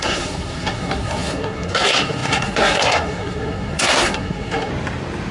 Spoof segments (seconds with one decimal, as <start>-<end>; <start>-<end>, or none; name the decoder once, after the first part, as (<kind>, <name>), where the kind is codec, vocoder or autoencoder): 0.0-4.7 (codec, SNAC)

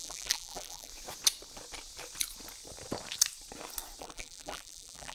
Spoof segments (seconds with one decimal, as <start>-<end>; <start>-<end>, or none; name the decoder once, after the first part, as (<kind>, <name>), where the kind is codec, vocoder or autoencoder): 0.0-0.9 (vocoder, BigVGAN v2); 4.0-5.1

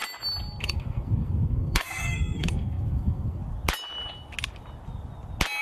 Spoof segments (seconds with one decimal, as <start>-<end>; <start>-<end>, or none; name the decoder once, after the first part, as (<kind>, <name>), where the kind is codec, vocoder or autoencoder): 0.6-3.4 (codec, SNAC)

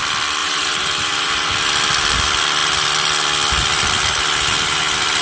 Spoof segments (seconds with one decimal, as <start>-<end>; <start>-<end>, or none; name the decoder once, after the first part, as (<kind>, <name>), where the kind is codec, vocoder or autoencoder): 0.4-1.5 (vocoder, BigVGAN v2)

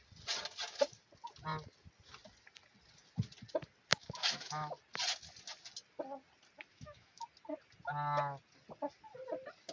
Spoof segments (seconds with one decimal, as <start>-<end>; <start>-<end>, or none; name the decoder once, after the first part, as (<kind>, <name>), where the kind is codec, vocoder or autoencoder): 3.9-4.7 (autoencoder, DAC-VAE); 6.7-7.2